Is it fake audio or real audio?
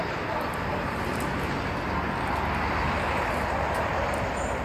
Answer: real